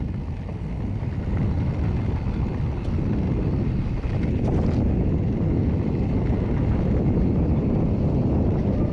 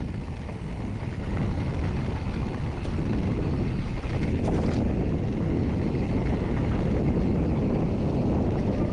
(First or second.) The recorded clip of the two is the second